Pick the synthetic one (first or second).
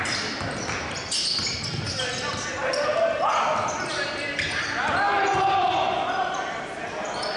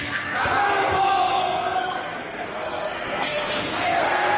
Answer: second